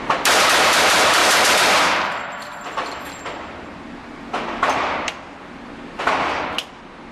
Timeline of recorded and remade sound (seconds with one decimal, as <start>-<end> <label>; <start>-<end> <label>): 0.0-1.2 remade; 1.2-2.2 recorded; 2.2-4.0 remade; 4.0-7.1 recorded